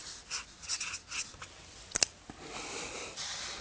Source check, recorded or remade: recorded